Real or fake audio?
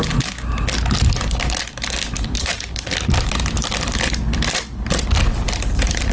real